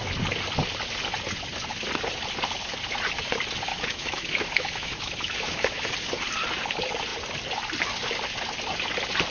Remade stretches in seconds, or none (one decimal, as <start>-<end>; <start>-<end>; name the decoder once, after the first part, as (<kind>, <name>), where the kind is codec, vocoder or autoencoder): 3.7-5.9 (autoencoder, DAC-VAE)